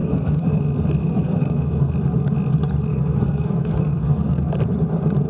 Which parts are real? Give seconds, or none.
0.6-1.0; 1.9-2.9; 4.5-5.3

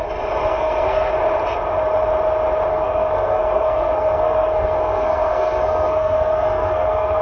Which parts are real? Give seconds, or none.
0.0-0.4; 1.1-2.7